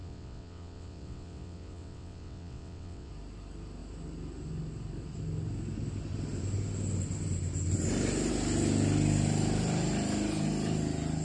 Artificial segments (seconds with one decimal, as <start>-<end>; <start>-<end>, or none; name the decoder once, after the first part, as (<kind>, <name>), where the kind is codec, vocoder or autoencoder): 0.0-3.1 (vocoder, WaveNeXt)